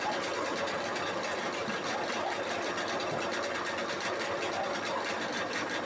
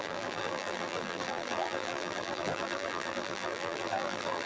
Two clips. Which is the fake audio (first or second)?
second